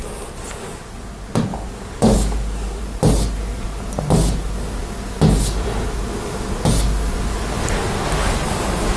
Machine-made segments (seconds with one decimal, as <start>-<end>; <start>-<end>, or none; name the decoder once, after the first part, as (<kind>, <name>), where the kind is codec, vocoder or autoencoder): 1.5-2.8 (codec, DAC)